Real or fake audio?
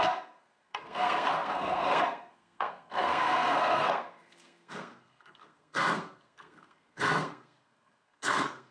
fake